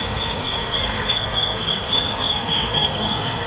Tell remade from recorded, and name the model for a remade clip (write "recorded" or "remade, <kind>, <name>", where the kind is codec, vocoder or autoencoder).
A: remade, codec, SNAC